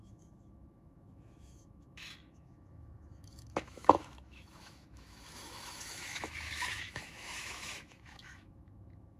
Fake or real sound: fake